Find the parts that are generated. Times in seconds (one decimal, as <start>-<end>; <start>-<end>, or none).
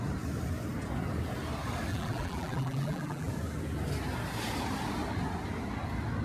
1.9-3.3